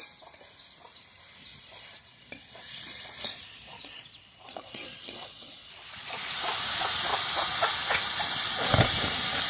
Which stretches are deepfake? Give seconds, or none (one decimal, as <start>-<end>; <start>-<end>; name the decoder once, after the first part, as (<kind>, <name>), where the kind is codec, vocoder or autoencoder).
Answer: 1.5-6.1 (vocoder, Vocos)